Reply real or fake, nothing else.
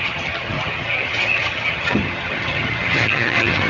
fake